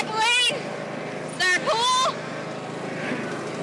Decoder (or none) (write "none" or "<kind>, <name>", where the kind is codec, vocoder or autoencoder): none